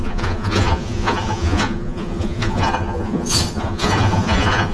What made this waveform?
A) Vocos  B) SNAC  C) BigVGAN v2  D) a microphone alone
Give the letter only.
A